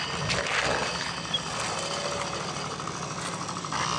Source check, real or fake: real